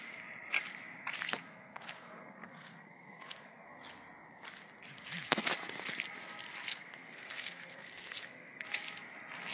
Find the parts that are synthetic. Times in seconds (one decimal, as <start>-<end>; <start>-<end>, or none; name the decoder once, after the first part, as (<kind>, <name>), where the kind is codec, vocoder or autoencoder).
1.5-3.8 (codec, SNAC); 6.7-8.6